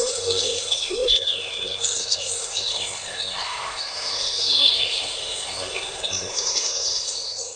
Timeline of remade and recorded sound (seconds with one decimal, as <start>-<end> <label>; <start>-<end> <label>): 0.0-7.6 remade

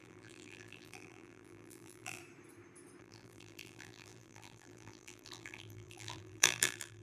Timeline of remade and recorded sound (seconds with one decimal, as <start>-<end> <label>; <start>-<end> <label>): 0.0-2.2 remade; 2.2-3.0 recorded; 3.0-7.0 remade

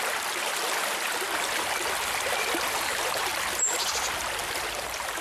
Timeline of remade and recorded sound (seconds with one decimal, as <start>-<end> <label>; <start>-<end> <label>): 0.0-3.3 remade; 3.3-4.8 recorded; 4.8-5.2 remade

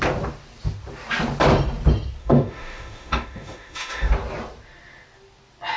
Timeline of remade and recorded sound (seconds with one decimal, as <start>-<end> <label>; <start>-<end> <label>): 0.0-2.2 recorded; 2.2-4.1 remade; 4.1-5.8 recorded

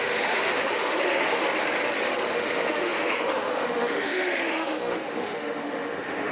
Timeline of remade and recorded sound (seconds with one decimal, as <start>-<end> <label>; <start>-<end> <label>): 0.0-1.4 remade; 1.4-2.3 recorded; 2.3-6.3 remade

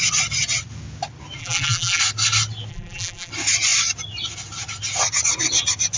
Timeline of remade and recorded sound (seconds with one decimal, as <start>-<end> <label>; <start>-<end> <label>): 0.0-1.4 recorded; 1.4-2.0 remade; 2.0-2.7 recorded; 2.7-3.3 remade; 3.3-6.0 recorded

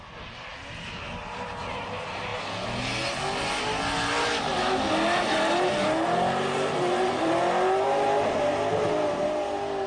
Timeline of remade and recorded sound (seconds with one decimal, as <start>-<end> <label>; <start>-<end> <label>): 0.0-9.9 recorded

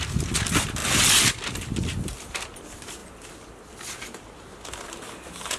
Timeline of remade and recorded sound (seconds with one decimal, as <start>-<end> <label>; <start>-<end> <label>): 0.0-5.6 recorded